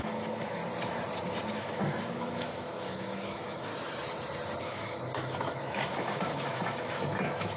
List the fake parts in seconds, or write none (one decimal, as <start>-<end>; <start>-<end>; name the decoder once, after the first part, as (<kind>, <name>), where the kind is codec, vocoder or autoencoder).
0.0-0.6 (autoencoder, DAC-VAE); 1.5-3.7; 4.6-7.6